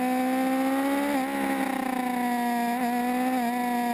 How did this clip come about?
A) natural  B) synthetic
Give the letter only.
A